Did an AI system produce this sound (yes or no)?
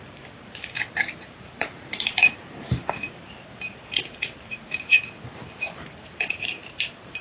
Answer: yes